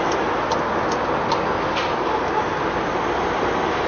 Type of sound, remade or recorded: recorded